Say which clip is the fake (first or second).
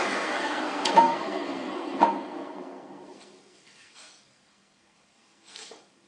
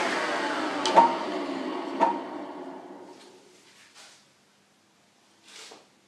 first